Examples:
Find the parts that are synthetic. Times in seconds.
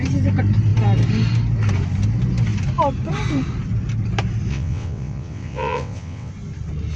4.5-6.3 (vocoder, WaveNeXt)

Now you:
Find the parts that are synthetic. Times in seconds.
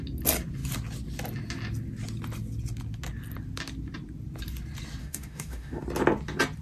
5.0-5.8 (autoencoder, DAC-VAE)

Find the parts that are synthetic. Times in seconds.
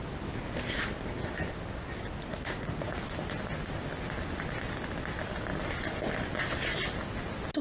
2.3-3.0 (vocoder, Vocos)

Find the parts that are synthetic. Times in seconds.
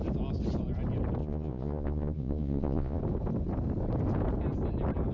1.2-3.0 (vocoder, Vocos)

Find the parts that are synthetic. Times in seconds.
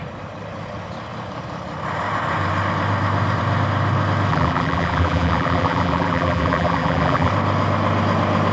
4.3-7.3 (vocoder, BigVGAN v2)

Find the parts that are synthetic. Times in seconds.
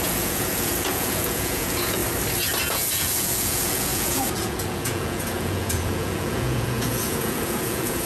0.0-2.0 (vocoder, Vocos); 2.6-8.1